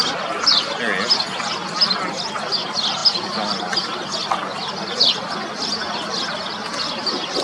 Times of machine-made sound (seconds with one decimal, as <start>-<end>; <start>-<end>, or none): none